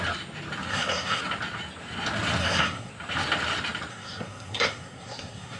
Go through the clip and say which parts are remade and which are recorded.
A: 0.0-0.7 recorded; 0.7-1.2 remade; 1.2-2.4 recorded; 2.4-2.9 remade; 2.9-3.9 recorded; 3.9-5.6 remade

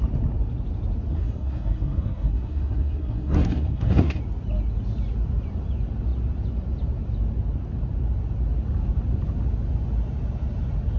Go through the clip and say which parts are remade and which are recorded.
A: 0.0-1.1 recorded; 1.1-4.2 remade; 4.2-11.0 recorded

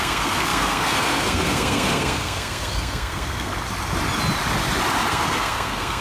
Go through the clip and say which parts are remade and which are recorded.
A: 0.0-3.5 remade; 3.5-5.1 recorded; 5.1-6.0 remade

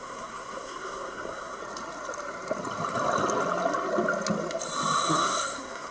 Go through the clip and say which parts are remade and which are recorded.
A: 0.0-1.6 remade; 1.6-5.1 recorded; 5.1-5.9 remade

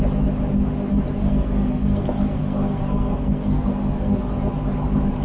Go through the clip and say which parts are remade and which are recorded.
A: 0.0-1.2 recorded; 1.2-4.3 remade; 4.3-5.2 recorded